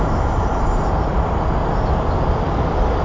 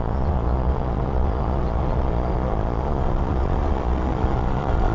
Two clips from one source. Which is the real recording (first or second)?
first